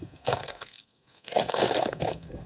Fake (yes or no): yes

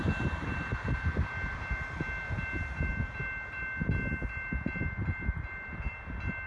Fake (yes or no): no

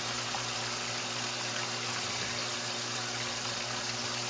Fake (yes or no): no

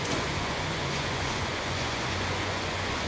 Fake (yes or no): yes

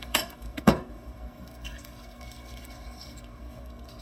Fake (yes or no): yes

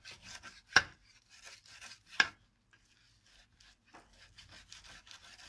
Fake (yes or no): no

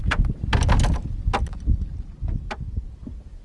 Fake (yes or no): no